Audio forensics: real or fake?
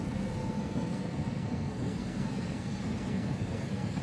fake